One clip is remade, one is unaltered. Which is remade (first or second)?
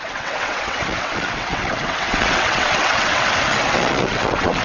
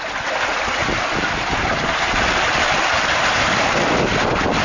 first